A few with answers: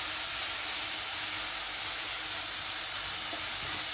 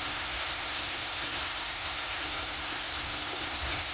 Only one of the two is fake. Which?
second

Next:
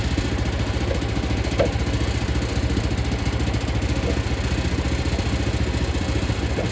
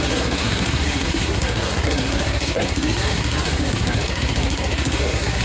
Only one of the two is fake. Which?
second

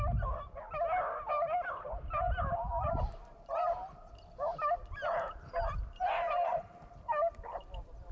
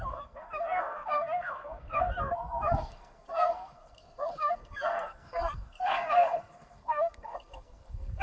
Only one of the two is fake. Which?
second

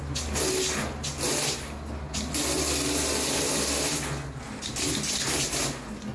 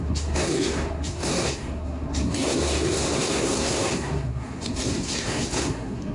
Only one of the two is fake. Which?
second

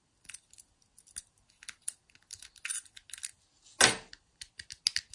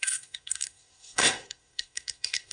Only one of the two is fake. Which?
second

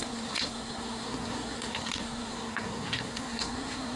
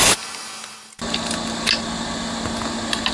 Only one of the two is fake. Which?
first